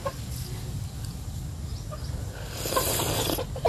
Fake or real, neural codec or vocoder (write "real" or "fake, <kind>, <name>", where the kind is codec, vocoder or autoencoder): real